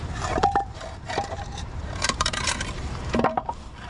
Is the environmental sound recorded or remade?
remade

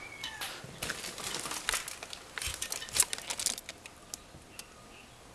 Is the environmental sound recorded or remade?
recorded